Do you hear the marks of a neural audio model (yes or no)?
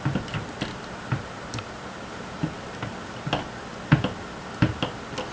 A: no